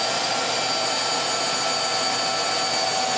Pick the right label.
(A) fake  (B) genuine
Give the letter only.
B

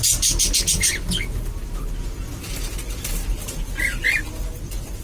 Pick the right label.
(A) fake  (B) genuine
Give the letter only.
B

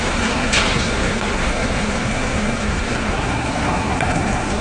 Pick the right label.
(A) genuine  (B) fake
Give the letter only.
B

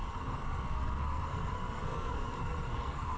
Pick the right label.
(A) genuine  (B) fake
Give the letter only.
B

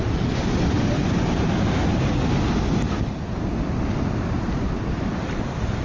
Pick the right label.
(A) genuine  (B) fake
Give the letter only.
A